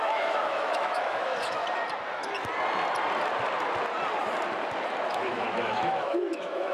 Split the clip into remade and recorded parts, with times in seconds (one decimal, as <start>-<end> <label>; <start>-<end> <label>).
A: 0.0-1.6 remade; 1.6-5.1 recorded; 5.1-6.7 remade